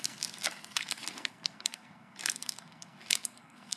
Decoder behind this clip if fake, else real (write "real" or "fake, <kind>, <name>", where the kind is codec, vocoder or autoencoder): fake, codec, SNAC